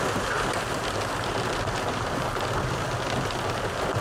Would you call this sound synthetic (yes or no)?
no